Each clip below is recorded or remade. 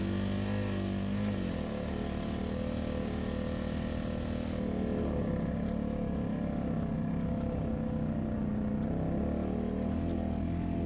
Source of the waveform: recorded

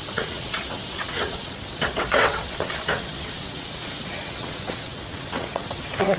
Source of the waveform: remade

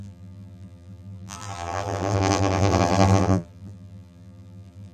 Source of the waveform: remade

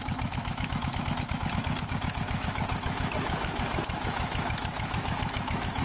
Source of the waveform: remade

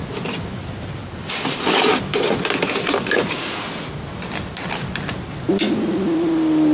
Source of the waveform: recorded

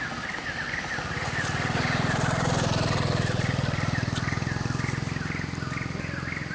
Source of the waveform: recorded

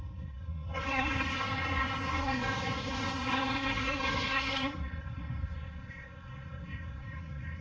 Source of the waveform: remade